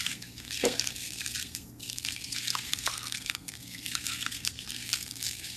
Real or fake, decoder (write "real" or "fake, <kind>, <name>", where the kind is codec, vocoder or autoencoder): fake, codec, SNAC